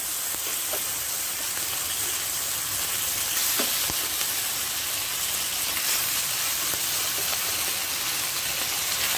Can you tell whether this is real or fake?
real